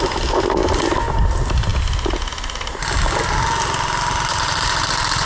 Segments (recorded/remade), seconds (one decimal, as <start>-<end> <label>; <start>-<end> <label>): 0.0-5.3 recorded